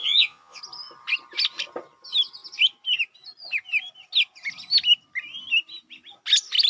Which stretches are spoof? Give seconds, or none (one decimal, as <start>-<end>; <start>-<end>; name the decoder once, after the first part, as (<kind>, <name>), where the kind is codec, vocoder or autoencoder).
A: 0.0-0.6 (vocoder, Vocos)